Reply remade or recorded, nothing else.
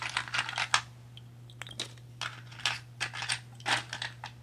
recorded